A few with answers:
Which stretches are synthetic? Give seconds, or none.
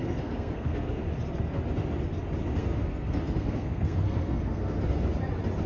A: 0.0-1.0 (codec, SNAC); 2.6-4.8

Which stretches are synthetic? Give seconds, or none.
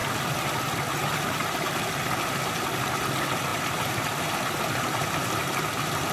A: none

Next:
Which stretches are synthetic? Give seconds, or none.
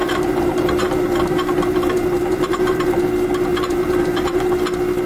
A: 0.0-3.0 (vocoder, BigVGAN v2); 3.5-4.5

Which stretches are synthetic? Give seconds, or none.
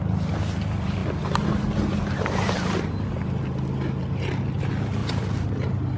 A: 5.0-5.6 (vocoder, BigVGAN v2)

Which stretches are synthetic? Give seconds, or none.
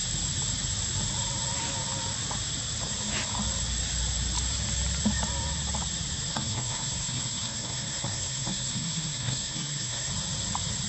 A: 6.3-10.1 (codec, SNAC)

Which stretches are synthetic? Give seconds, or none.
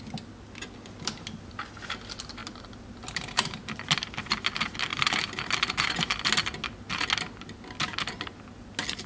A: 2.4-3.9 (vocoder, BigVGAN v2); 4.9-6.2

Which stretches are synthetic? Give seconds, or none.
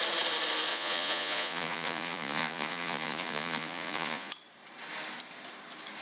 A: 0.7-4.3 (vocoder, Vocos)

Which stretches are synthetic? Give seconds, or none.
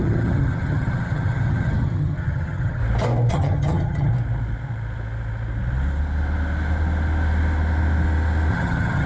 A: 0.0-2.8 (vocoder, HiFi-GAN); 3.3-4.1; 8.5-9.1